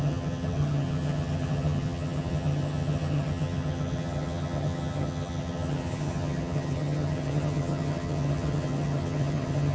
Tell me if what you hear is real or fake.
fake